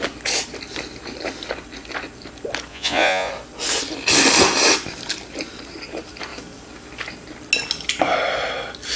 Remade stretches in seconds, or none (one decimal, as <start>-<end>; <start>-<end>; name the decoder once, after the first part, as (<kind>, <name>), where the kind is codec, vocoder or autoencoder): 2.7-3.3 (vocoder, Vocos)